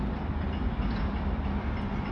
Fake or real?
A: real